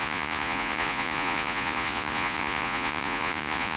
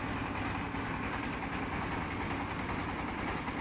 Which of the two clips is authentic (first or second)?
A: second